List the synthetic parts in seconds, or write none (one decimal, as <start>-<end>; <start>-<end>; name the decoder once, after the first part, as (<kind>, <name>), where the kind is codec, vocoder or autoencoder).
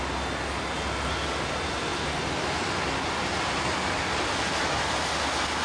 none